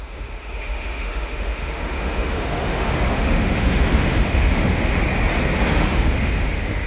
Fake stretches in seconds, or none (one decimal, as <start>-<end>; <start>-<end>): 0.0-5.0; 5.7-6.9

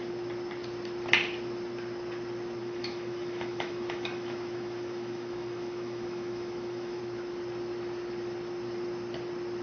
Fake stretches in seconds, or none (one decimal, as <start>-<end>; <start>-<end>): 2.6-7.0

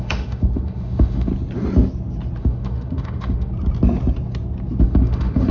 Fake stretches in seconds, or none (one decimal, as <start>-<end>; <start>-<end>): 0.0-1.3; 2.4-3.5; 4.8-5.5

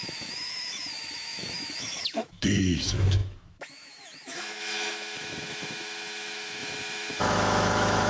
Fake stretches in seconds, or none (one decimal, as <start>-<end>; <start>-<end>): 0.0-8.1

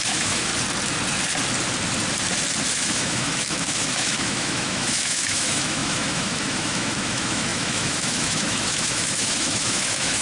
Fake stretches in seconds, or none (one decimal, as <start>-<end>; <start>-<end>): 0.0-0.5; 2.7-10.2

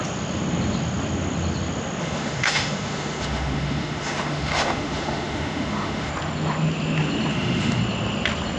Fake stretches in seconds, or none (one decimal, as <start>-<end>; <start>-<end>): 2.0-6.1; 7.3-7.8